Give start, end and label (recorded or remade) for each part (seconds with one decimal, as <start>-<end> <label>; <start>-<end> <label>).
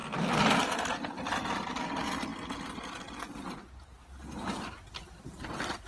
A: 0.0-5.9 recorded